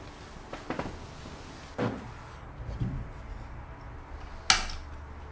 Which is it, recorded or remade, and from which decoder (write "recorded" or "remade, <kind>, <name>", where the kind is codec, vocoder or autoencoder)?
recorded